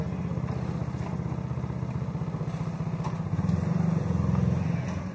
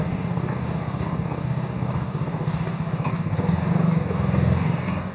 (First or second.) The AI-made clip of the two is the second